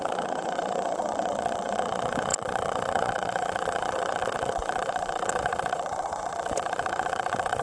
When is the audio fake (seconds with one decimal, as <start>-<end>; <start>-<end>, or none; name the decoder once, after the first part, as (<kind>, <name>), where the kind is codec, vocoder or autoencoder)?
0.0-7.6 (vocoder, WaveNeXt)